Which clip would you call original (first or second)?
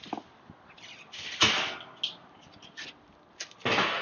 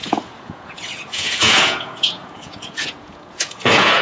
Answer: first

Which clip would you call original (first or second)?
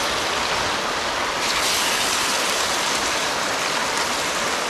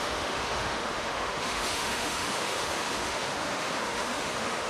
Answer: first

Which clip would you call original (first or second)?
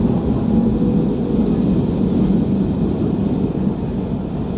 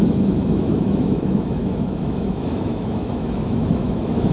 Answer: first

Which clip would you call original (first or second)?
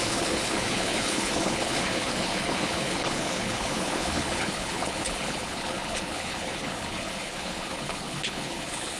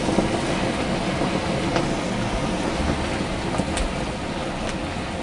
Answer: second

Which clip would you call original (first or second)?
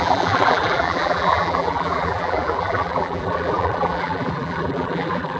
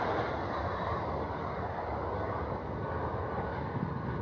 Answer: second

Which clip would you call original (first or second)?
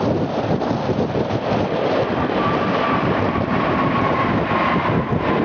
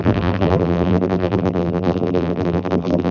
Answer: first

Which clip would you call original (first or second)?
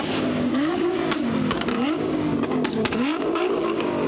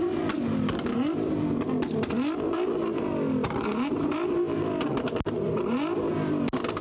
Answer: second